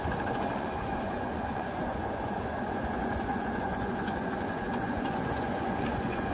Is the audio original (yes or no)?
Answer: no